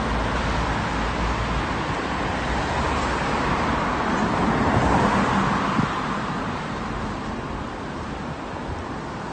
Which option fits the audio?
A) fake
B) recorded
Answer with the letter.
B